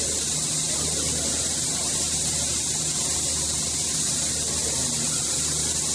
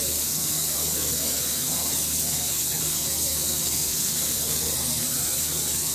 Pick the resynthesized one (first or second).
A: second